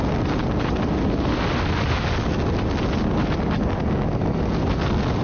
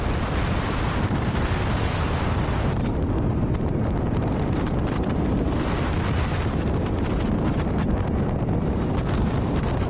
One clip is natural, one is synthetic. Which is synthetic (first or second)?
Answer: second